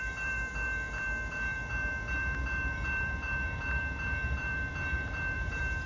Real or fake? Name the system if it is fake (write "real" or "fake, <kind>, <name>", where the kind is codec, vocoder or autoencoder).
fake, vocoder, BigVGAN v2